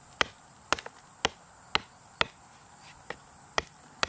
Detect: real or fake real